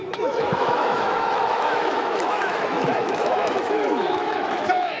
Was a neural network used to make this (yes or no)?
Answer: yes